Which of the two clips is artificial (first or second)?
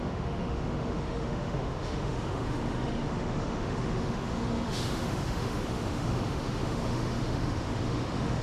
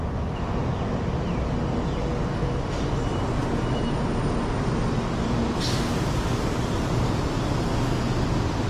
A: first